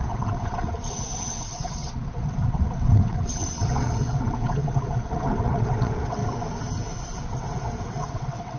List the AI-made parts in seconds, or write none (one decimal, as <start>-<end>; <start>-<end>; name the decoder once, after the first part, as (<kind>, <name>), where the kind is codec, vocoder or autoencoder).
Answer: 0.0-6.2 (vocoder, WaveNeXt); 7.2-8.6